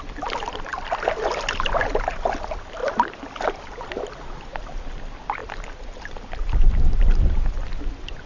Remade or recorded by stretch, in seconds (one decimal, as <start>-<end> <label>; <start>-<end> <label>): 0.0-0.7 recorded; 0.7-1.4 remade; 1.4-2.8 recorded; 2.8-3.6 remade; 3.6-5.4 recorded; 5.4-7.2 remade; 7.2-8.3 recorded